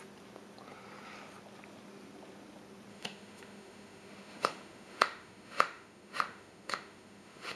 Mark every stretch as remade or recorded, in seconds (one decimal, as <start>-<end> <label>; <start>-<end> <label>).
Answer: 0.0-2.9 recorded; 2.9-7.6 remade